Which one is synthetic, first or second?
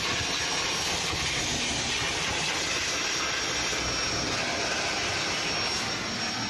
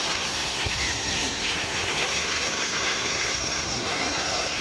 second